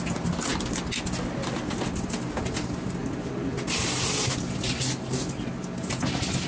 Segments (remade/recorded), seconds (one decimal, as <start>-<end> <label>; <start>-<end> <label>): 0.0-6.5 recorded

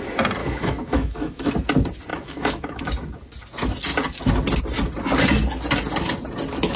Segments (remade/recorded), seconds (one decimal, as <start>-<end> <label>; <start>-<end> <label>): 0.0-0.4 recorded; 0.4-1.5 remade; 1.5-2.1 recorded; 2.1-2.8 remade; 2.8-6.8 recorded

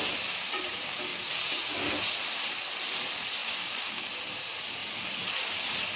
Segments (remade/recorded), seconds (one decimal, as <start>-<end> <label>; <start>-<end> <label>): 0.0-1.1 remade; 1.1-2.0 recorded; 2.0-3.4 remade; 3.4-4.1 recorded; 4.1-4.8 remade; 4.8-6.0 recorded

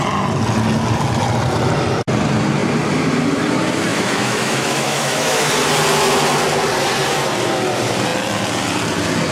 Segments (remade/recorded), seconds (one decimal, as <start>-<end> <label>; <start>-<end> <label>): 0.0-3.9 recorded; 3.9-5.5 remade; 5.5-9.3 recorded

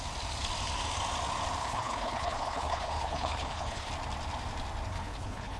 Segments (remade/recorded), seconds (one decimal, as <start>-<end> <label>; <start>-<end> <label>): 0.0-1.6 recorded; 1.6-3.9 remade; 3.9-4.9 recorded; 4.9-5.6 remade

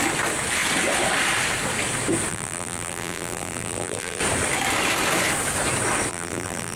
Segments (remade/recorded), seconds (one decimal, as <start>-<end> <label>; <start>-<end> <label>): 0.0-2.3 recorded; 2.3-4.2 remade; 4.2-6.1 recorded; 6.1-6.8 remade

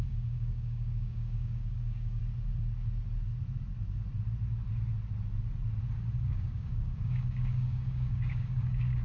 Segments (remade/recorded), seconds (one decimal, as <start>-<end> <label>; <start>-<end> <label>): 0.0-2.2 remade; 2.2-6.2 recorded; 6.2-9.0 remade